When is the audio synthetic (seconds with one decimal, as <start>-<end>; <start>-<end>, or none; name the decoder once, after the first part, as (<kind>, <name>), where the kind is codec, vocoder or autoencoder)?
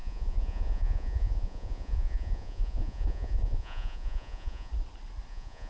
0.0-4.7 (vocoder, Vocos); 5.3-5.7